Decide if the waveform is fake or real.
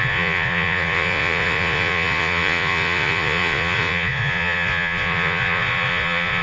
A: fake